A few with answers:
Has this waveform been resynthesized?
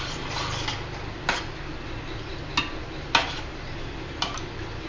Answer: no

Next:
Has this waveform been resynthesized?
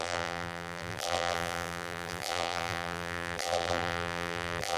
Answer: yes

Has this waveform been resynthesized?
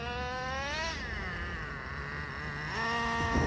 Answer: no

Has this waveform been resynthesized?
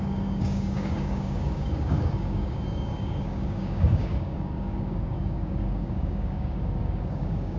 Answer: yes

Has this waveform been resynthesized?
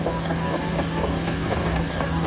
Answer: yes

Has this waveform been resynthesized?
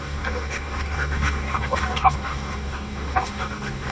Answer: yes